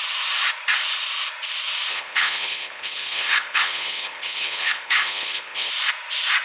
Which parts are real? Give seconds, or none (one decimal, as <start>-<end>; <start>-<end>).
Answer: 0.0-1.9; 5.7-6.4